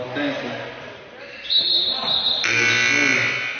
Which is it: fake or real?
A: real